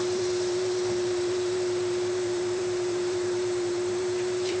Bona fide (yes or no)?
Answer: no